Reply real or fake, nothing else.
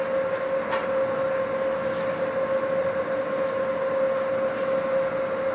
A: real